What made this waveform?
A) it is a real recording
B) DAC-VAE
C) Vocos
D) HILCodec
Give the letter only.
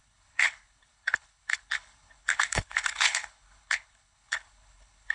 D